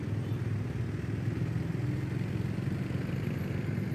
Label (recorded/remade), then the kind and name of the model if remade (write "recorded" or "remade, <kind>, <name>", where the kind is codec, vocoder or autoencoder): recorded